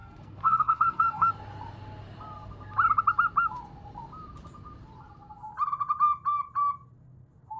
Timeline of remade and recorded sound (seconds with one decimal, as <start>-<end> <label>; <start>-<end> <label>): 0.0-1.3 remade; 1.3-7.6 recorded